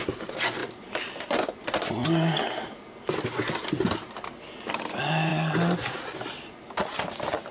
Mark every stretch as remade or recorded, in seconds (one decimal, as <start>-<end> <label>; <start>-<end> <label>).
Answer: 0.0-7.5 recorded